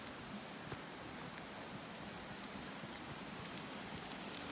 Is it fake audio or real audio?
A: real